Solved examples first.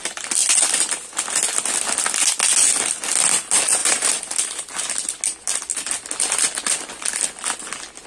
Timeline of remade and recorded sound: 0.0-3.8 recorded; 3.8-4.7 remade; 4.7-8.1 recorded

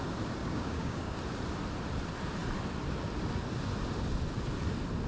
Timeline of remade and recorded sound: 0.0-0.4 recorded; 0.4-1.2 remade; 1.2-5.1 recorded

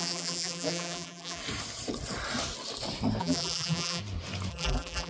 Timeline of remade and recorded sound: 0.0-1.4 remade; 1.4-3.2 recorded; 3.2-4.0 remade; 4.0-4.5 recorded; 4.5-5.1 remade

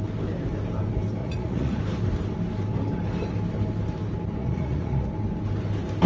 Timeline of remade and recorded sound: 0.0-1.2 recorded; 1.2-1.8 remade; 1.8-4.4 recorded; 4.4-5.1 remade; 5.1-6.1 recorded

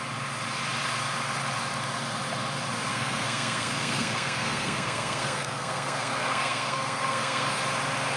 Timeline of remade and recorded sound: 0.0-2.9 recorded; 2.9-7.6 remade; 7.6-8.2 recorded